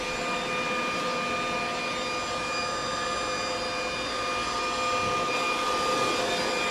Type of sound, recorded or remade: recorded